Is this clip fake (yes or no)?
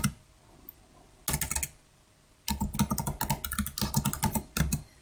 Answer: no